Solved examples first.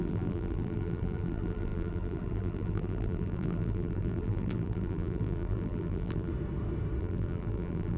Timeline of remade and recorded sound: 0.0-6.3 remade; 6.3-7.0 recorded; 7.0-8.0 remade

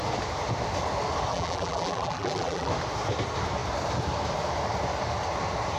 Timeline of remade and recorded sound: 0.0-1.3 recorded; 1.3-2.7 remade; 2.7-5.8 recorded

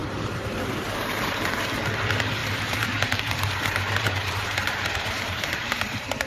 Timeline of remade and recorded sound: 0.0-1.6 remade; 1.6-2.4 recorded; 2.4-6.3 remade